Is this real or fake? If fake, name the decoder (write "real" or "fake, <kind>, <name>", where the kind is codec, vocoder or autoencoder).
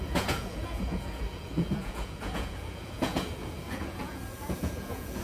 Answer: fake, vocoder, Vocos